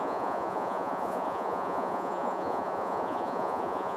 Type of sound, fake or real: fake